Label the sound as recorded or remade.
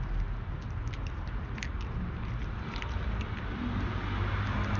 recorded